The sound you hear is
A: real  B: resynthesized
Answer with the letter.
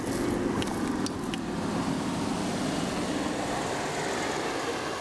A